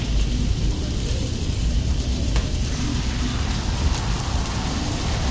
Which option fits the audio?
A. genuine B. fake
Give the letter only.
B